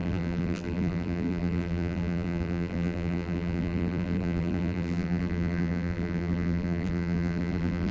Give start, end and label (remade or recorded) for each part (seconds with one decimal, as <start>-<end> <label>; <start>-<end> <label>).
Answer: 0.0-7.9 remade